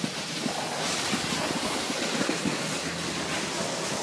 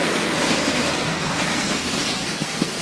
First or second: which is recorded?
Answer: first